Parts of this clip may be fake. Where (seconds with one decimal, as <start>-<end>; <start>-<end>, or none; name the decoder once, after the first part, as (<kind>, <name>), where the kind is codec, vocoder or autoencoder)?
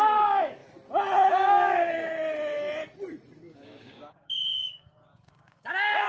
0.0-0.6 (codec, DAC); 1.3-2.1; 3.4-6.1